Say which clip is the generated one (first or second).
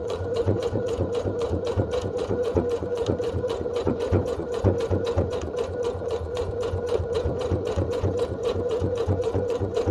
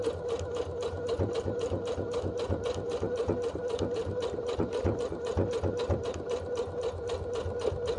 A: first